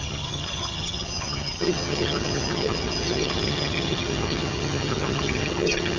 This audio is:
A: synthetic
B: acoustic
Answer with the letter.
A